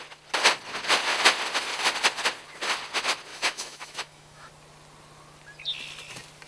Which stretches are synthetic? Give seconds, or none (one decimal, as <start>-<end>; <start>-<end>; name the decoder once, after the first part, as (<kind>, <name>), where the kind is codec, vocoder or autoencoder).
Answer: 3.3-4.5 (autoencoder, DAC-VAE)